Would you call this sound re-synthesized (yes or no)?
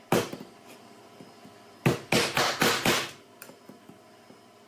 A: no